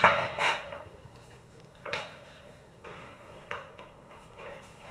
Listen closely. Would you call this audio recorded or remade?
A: remade